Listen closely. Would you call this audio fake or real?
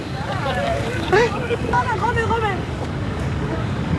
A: fake